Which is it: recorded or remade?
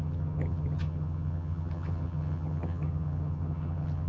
remade